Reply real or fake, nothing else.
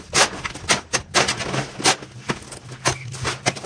real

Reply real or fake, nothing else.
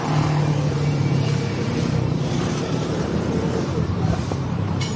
fake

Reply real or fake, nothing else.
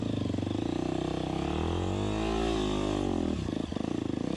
real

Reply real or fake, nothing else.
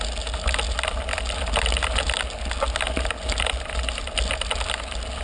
real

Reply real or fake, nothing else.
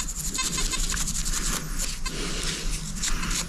real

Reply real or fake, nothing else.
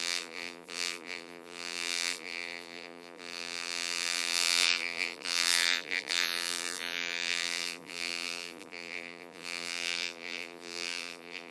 fake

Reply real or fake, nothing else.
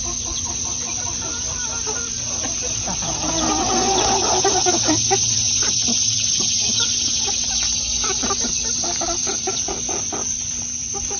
fake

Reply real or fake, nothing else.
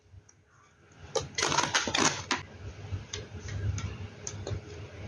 real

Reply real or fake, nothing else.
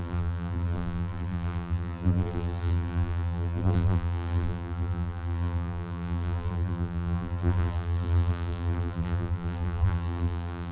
fake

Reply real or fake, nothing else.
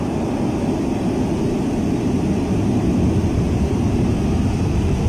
fake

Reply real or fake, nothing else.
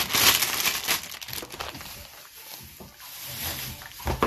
real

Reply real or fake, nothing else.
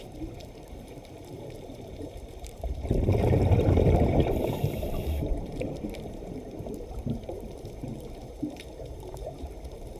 fake